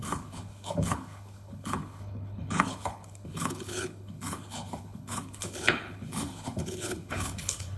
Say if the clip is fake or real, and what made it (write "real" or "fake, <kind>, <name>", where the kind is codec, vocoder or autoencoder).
fake, codec, HILCodec